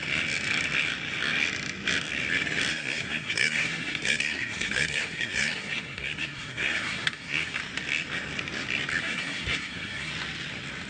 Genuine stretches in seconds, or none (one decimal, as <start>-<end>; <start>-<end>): 0.0-2.7; 7.6-9.0; 10.1-10.9